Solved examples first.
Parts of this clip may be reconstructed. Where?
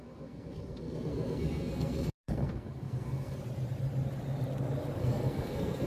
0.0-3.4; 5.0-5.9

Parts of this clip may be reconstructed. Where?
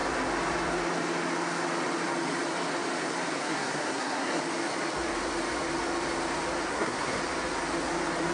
3.4-4.4; 6.7-7.2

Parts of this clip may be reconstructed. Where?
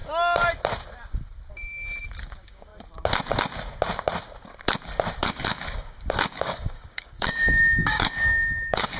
1.5-2.7; 5.2-9.0